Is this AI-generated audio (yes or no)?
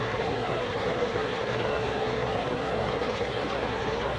yes